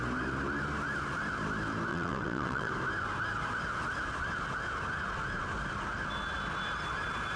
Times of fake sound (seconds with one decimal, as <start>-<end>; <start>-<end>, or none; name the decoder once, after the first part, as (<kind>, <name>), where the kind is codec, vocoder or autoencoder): 1.9-2.7 (vocoder, WaveNeXt)